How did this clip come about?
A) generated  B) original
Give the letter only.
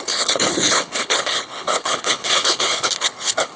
A